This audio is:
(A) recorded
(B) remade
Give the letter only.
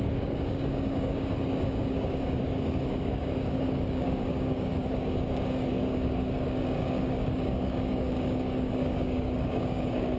B